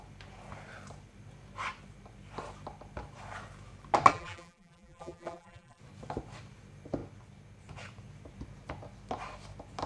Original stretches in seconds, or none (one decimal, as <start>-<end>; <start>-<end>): 0.0-4.1; 5.8-9.9